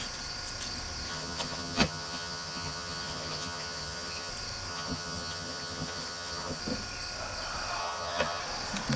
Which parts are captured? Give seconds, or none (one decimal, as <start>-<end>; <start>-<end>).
0.0-1.1; 4.3-4.7; 6.6-7.8; 8.4-9.0